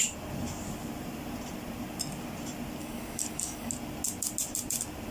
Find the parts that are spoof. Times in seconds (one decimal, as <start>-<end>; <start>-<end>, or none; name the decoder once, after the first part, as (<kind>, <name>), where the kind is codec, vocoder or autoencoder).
2.8-3.7 (codec, DAC)